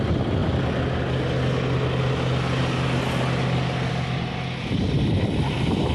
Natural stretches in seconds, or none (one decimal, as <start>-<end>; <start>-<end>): 0.0-5.9

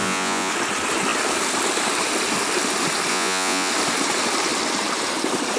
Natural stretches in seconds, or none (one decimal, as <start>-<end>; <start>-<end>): 0.5-3.1; 3.7-5.6

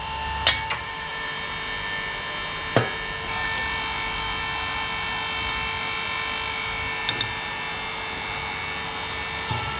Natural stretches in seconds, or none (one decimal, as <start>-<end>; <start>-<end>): 0.0-9.8

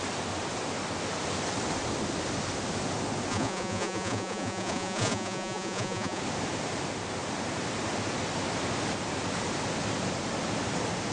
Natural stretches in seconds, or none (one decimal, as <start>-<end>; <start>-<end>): 0.0-3.3; 6.2-11.1

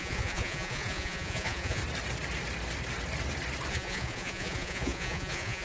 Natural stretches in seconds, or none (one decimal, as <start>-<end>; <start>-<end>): 1.8-3.7

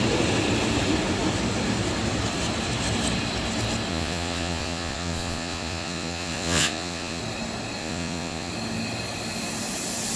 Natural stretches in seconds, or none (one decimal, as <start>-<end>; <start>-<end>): 0.0-3.9; 7.2-7.8; 8.5-10.2

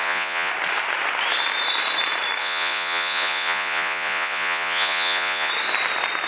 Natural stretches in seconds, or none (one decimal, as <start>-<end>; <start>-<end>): 0.5-2.4; 5.5-6.3